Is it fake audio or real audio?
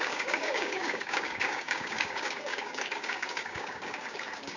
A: fake